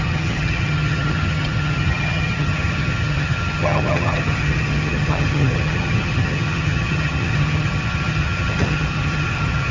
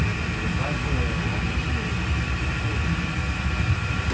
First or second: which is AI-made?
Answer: first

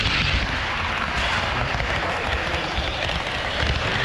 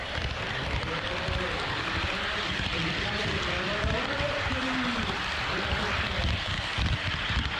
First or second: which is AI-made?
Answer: second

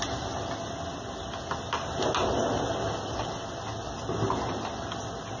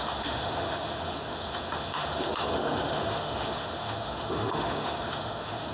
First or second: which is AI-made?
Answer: second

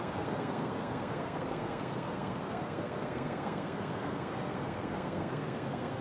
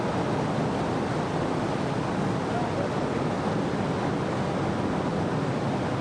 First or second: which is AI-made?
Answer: first